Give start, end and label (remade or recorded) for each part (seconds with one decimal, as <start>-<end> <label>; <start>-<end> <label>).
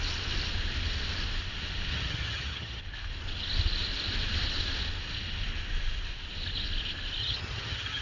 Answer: 0.0-1.9 recorded; 1.9-2.8 remade; 2.8-7.2 recorded; 7.2-8.0 remade